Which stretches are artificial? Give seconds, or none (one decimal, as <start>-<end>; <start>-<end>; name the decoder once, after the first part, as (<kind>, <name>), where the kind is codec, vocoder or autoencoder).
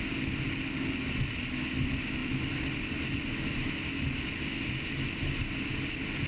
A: none